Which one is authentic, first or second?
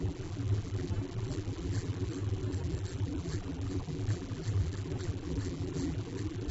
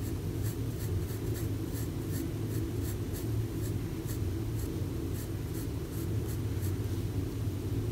second